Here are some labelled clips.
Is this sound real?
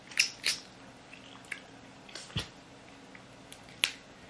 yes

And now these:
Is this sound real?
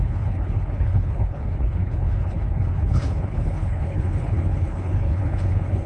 no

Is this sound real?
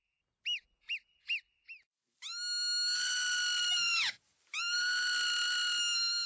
yes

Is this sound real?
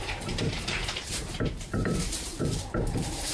no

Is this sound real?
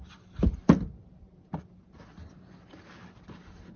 yes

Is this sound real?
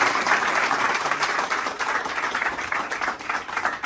no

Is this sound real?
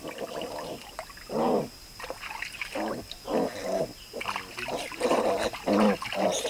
yes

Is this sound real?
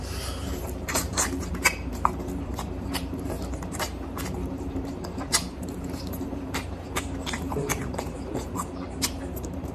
no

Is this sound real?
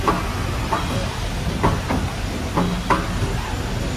yes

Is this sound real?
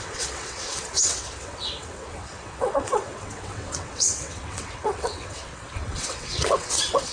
no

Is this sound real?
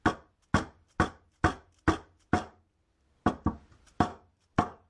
yes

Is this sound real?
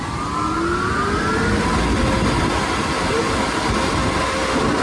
yes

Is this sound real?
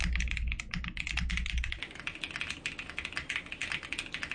yes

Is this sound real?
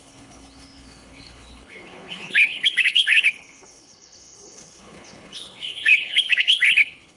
no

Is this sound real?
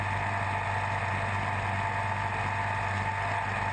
yes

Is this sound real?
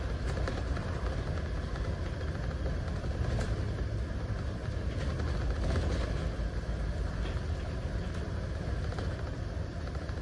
yes